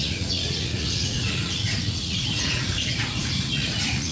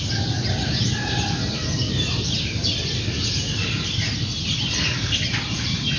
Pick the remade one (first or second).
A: first